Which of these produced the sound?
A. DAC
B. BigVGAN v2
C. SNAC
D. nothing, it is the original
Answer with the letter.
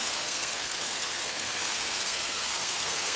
C